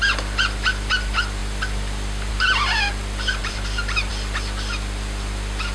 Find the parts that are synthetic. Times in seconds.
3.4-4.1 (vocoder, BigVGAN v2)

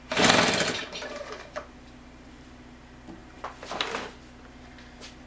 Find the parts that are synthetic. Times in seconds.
0.8-2.8 (vocoder, BigVGAN v2); 3.2-4.6